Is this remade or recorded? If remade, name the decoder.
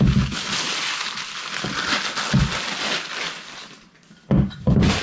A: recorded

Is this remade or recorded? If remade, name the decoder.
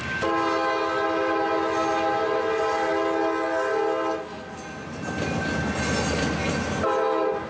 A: recorded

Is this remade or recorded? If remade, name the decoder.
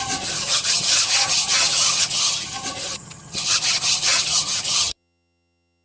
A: remade, vocoder, HiFi-GAN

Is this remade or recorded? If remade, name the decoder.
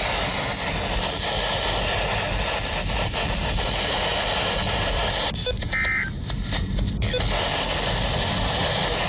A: recorded